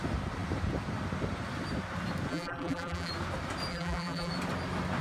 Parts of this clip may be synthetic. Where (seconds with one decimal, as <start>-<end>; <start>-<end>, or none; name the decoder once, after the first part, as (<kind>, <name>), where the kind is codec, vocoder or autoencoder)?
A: 2.3-3.1 (vocoder, BigVGAN v2); 3.7-4.3